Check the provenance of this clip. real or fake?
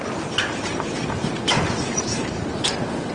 real